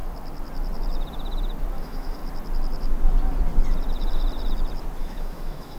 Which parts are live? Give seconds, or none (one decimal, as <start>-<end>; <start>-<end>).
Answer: 0.0-1.8; 2.2-5.0